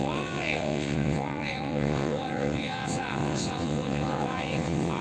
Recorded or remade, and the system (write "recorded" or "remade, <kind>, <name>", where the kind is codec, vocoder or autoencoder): remade, vocoder, WaveNeXt